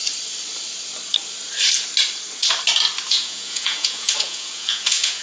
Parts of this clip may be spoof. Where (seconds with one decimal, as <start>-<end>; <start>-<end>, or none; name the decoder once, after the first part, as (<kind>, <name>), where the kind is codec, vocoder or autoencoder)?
3.1-5.2 (vocoder, Vocos)